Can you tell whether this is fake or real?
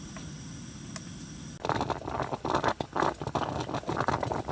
real